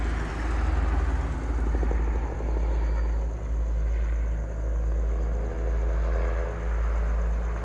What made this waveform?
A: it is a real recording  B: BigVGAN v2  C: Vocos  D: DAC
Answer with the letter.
A